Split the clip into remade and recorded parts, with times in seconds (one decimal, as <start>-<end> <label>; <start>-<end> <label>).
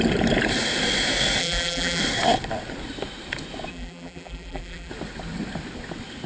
0.0-1.4 recorded; 1.4-2.0 remade; 2.0-3.7 recorded; 3.7-4.9 remade; 4.9-6.3 recorded